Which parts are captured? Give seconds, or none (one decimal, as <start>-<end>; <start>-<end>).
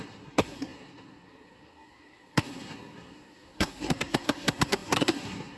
none